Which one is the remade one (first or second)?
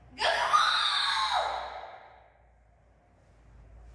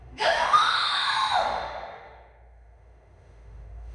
second